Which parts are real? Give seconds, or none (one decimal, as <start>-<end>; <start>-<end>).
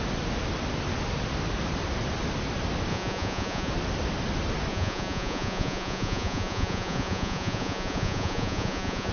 0.0-2.9; 3.7-4.7